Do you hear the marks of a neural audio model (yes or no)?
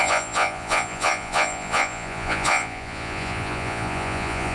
yes